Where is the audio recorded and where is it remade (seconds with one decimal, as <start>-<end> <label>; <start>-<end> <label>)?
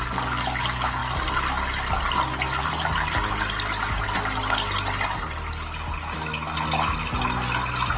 0.0-8.0 recorded